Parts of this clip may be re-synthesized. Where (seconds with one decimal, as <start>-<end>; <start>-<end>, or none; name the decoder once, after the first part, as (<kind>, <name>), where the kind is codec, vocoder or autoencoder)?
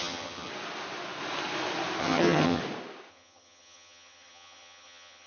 0.0-0.5 (vocoder, HiFi-GAN); 2.0-2.6; 3.1-5.3